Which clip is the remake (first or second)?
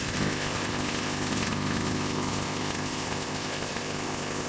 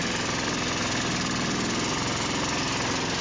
first